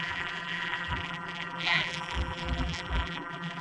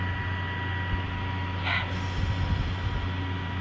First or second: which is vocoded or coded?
first